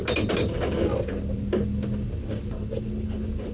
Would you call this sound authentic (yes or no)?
yes